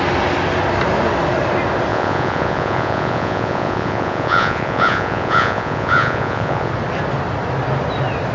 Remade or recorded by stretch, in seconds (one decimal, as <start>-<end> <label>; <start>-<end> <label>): 0.0-1.9 recorded; 1.9-6.7 remade; 6.7-8.3 recorded